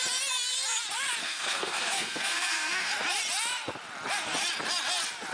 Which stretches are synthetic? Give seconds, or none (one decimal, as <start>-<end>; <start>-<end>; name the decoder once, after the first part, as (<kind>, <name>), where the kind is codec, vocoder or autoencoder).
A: 1.2-2.9 (codec, SNAC)